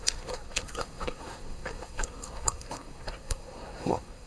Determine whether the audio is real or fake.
fake